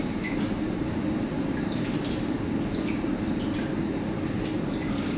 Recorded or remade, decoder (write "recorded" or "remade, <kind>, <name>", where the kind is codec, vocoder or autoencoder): recorded